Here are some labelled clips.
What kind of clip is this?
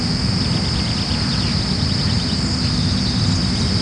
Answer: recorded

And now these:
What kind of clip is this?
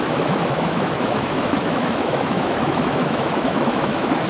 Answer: remade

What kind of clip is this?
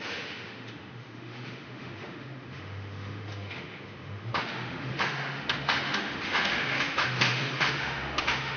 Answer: remade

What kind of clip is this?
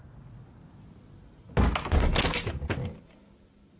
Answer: recorded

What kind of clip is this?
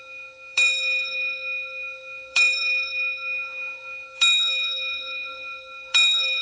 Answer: remade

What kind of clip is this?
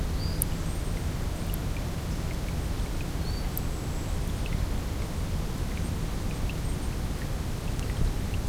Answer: recorded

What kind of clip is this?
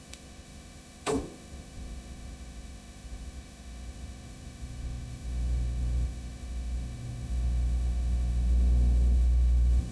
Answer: remade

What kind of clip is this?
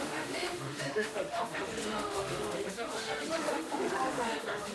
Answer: remade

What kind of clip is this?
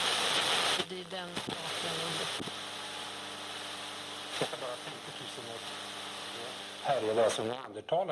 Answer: recorded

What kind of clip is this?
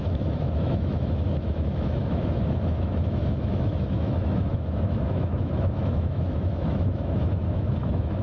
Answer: remade